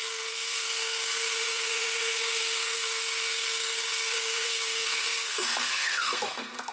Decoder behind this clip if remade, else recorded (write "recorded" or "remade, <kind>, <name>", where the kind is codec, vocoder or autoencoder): remade, codec, SNAC